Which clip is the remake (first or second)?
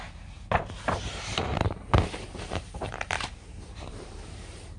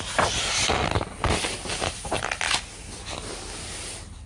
first